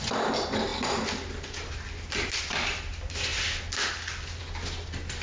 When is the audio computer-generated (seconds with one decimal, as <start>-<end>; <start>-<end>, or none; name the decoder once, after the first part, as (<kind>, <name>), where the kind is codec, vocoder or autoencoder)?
none